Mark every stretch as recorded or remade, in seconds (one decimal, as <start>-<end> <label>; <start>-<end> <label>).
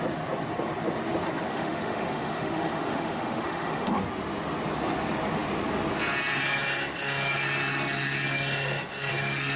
0.0-1.5 recorded; 1.5-4.0 remade; 4.0-9.6 recorded